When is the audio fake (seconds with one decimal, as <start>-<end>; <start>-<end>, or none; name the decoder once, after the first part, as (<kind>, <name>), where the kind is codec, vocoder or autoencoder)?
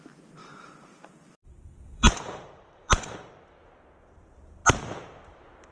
0.4-3.3 (vocoder, BigVGAN v2)